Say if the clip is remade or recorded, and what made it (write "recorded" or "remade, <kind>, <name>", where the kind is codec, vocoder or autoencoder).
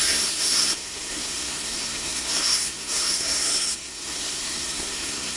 remade, codec, SNAC